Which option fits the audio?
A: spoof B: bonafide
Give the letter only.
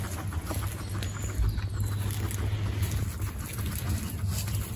B